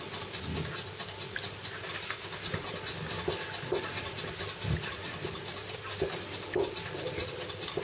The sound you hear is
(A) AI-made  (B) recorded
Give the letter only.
B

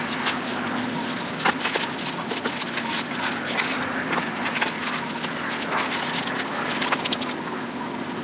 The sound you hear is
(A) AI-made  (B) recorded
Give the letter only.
B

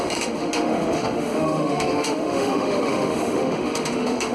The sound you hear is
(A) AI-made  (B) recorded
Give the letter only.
A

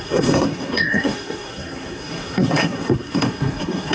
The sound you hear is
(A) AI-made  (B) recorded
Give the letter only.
A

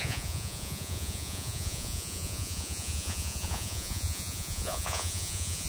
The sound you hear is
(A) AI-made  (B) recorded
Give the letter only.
A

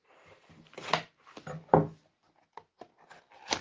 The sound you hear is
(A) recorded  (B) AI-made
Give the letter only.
A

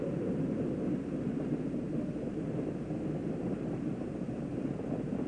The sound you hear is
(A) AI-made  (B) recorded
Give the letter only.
A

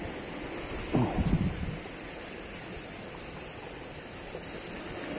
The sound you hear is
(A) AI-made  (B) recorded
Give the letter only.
B